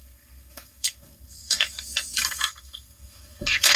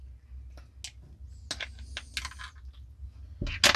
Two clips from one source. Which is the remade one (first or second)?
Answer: first